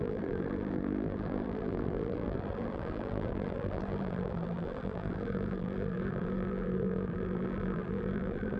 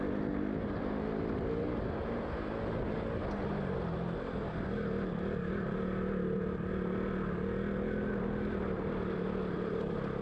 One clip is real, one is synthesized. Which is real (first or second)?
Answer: second